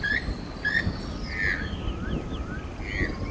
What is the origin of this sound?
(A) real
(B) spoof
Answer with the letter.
A